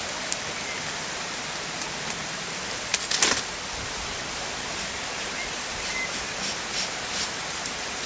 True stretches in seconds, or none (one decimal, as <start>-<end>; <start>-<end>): 0.0-8.1